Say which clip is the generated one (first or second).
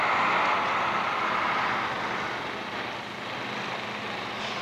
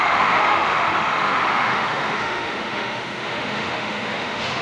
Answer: second